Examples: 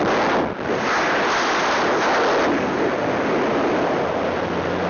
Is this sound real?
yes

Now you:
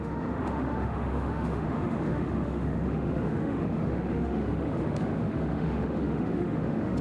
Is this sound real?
no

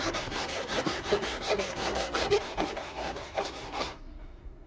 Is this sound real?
no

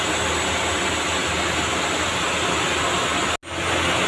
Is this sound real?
yes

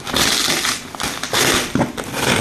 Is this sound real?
yes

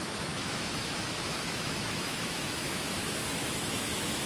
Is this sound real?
no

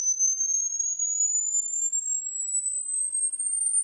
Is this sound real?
yes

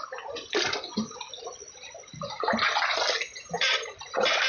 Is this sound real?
yes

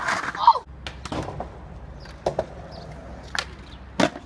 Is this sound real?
yes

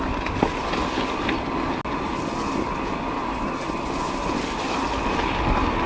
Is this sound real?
yes